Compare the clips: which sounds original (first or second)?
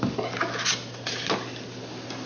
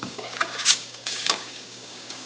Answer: first